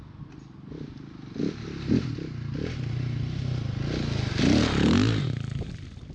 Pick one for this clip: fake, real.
real